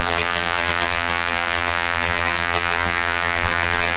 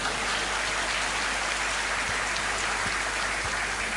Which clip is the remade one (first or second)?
first